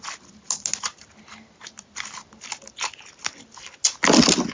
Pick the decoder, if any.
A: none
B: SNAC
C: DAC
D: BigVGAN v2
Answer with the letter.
A